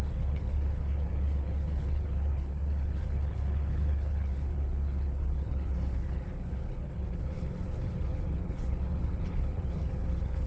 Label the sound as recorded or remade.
remade